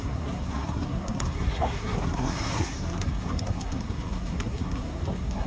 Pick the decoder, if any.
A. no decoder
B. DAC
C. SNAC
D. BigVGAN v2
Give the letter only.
C